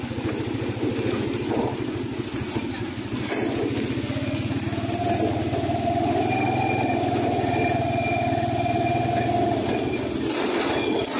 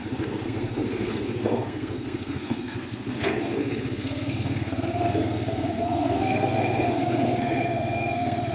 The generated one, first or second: second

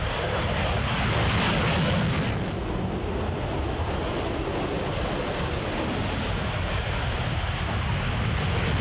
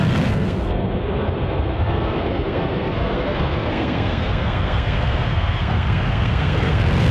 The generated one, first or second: second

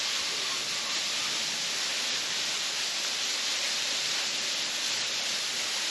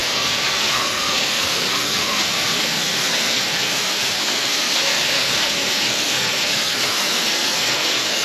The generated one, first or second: second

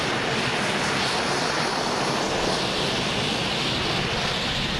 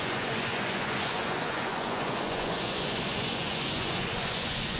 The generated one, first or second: second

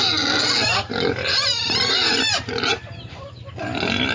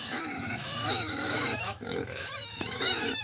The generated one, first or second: second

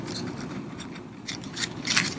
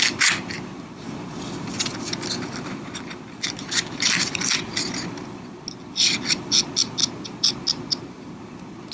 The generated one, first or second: first